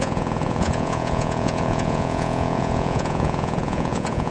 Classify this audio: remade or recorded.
remade